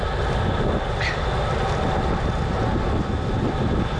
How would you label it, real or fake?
real